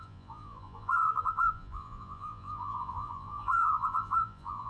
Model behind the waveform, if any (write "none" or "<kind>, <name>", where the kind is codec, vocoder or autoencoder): vocoder, Vocos